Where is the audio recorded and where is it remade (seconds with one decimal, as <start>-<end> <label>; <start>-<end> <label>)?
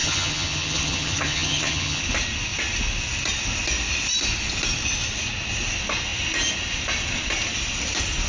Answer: 0.0-2.0 remade; 2.0-8.3 recorded